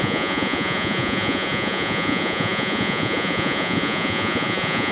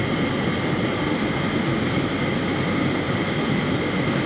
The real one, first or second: second